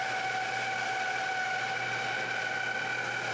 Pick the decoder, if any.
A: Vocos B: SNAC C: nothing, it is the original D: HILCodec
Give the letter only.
C